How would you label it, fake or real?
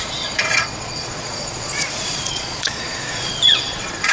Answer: fake